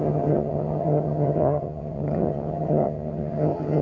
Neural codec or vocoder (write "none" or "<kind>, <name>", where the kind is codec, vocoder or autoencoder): vocoder, HiFi-GAN